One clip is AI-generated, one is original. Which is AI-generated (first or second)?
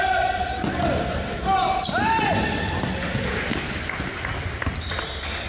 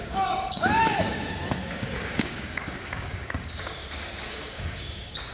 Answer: second